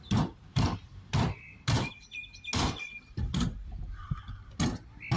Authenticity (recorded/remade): recorded